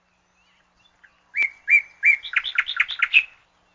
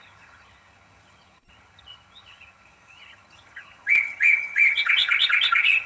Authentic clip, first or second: first